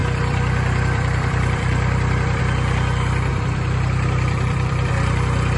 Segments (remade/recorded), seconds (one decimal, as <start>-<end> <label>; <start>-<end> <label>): 0.0-2.4 remade; 2.4-3.3 recorded; 3.3-4.9 remade; 4.9-5.6 recorded